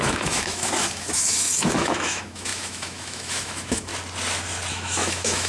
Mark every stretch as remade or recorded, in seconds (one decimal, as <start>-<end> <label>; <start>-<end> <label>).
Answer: 0.0-3.9 remade; 3.9-4.7 recorded; 4.7-5.5 remade